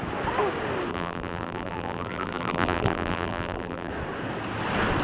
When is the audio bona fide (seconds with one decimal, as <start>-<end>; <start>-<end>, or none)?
0.0-0.9; 3.9-5.0

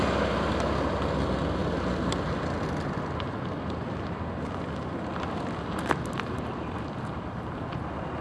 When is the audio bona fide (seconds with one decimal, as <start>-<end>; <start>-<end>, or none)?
0.0-8.2

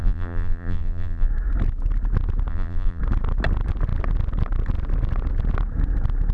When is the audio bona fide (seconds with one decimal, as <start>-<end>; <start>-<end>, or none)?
1.3-2.5; 3.0-6.3